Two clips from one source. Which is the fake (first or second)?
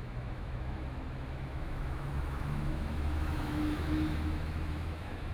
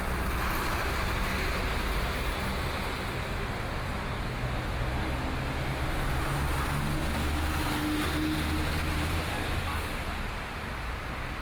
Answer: first